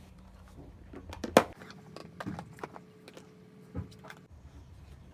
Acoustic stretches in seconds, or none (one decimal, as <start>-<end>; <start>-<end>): 0.0-5.1